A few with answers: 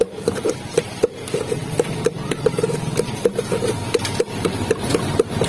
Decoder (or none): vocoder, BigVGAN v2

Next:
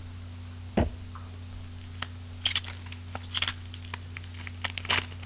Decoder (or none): none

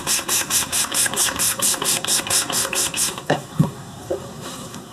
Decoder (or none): codec, SNAC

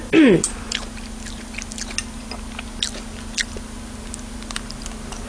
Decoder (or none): none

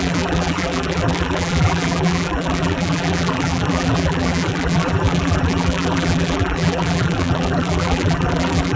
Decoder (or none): vocoder, BigVGAN v2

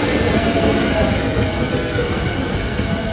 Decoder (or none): codec, SNAC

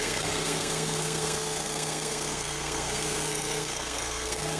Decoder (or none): codec, SNAC